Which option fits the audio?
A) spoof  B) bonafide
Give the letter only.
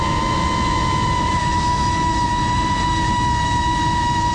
A